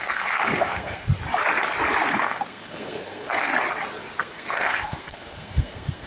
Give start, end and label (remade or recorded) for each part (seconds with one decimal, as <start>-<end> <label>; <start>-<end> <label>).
0.0-1.1 remade; 1.1-2.2 recorded; 2.2-3.5 remade; 3.5-4.2 recorded; 4.2-6.1 remade